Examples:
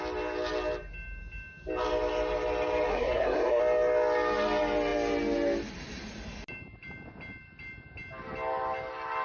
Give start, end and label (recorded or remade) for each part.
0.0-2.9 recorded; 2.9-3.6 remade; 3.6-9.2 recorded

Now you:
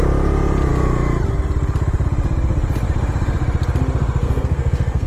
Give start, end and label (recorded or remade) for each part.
0.0-4.2 recorded; 4.2-5.1 remade

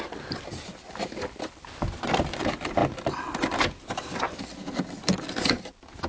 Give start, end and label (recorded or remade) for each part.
0.0-6.1 recorded

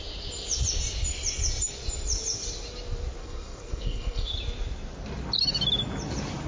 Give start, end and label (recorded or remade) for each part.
0.0-3.2 recorded; 3.2-4.3 remade; 4.3-6.5 recorded

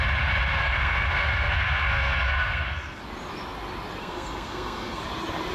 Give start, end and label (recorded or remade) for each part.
0.0-0.6 recorded; 0.6-3.0 remade; 3.0-4.0 recorded; 4.0-5.0 remade; 5.0-5.5 recorded

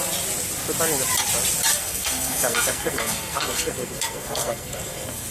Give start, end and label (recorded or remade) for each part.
0.0-1.7 recorded; 1.7-5.3 remade

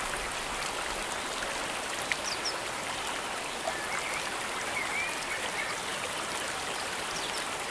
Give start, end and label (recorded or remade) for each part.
0.0-7.7 recorded